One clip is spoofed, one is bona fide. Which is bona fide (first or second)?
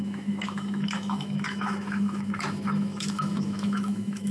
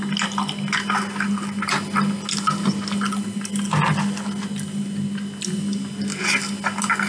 second